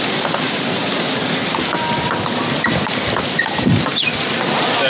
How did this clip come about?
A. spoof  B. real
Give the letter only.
B